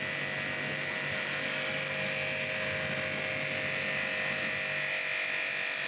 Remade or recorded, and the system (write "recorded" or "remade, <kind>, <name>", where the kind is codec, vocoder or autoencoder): recorded